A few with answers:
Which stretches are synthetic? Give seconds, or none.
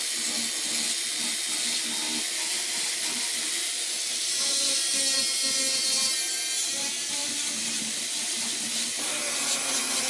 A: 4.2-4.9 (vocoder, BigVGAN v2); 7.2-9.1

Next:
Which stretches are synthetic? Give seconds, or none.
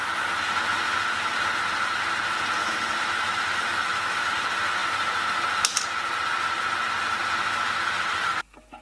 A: 2.6-4.3 (autoencoder, DAC-VAE)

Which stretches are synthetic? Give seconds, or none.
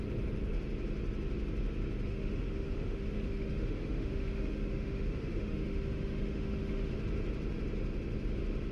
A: 2.1-6.9 (autoencoder, DAC-VAE)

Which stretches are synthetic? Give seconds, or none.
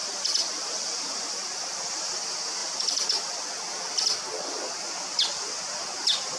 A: 0.0-1.6 (vocoder, BigVGAN v2); 2.6-3.4